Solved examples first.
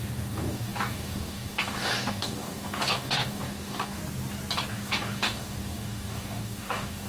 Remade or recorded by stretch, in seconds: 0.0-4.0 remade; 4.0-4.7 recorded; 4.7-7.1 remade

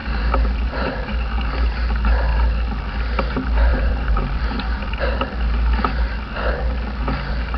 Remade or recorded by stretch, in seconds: 0.0-3.7 recorded; 3.7-5.0 remade; 5.0-7.6 recorded

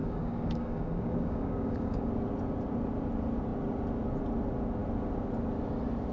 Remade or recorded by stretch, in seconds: 0.0-2.1 remade; 2.1-6.1 recorded

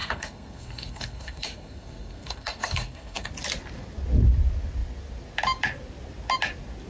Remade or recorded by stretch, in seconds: 0.0-3.3 remade; 3.3-6.9 recorded

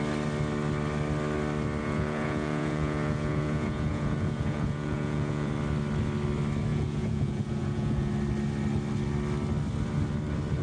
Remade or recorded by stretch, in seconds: 0.0-1.8 recorded; 1.8-5.5 remade; 5.5-6.7 recorded; 6.7-8.1 remade; 8.1-10.6 recorded

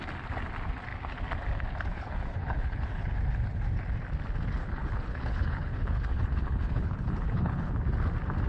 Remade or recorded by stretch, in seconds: 0.0-1.9 recorded; 1.9-3.1 remade; 3.1-4.6 recorded; 4.6-7.7 remade; 7.7-8.5 recorded

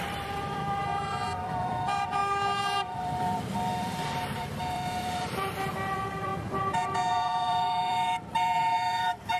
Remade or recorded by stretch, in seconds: 0.0-2.2 remade; 2.2-2.8 recorded; 2.8-6.3 remade; 6.3-7.1 recorded; 7.1-9.4 remade